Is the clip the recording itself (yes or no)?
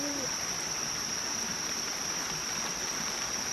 yes